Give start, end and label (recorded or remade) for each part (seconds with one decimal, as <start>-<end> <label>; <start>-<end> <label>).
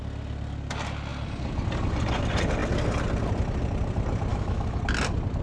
0.0-4.3 recorded; 4.3-4.8 remade; 4.8-5.4 recorded